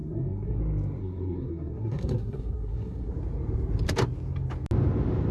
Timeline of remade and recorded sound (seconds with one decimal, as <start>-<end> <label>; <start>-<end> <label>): 0.0-0.6 remade; 0.6-1.0 recorded; 1.0-3.1 remade; 3.1-5.3 recorded